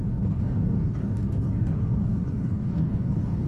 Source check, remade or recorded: remade